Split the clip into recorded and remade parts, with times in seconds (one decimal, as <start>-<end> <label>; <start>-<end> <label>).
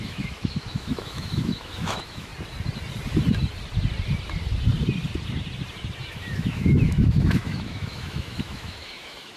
0.0-2.3 remade; 2.3-6.1 recorded; 6.1-9.4 remade